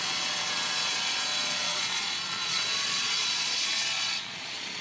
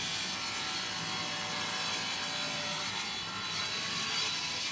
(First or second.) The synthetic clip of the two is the first